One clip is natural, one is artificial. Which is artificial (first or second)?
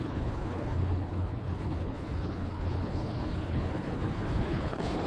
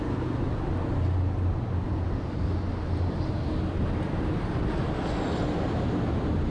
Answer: first